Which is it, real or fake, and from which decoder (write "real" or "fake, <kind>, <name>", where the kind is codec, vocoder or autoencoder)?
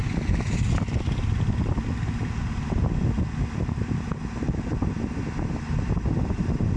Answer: real